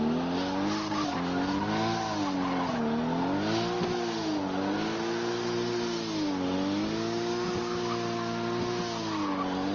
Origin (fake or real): real